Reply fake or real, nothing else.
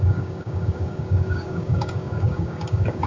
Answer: fake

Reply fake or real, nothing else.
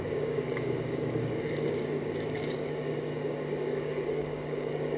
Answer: fake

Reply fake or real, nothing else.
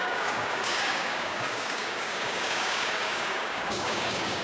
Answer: fake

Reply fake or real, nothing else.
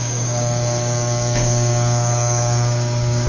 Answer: fake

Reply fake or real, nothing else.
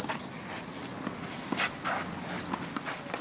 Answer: real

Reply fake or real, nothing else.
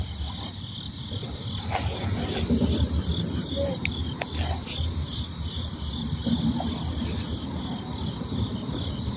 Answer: real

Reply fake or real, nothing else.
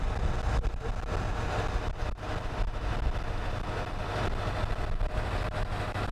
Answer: real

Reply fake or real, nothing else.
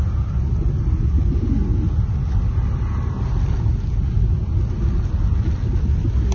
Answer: real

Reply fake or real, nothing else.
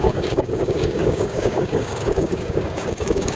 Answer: fake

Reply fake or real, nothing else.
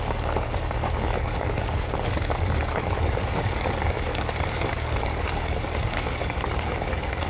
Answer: fake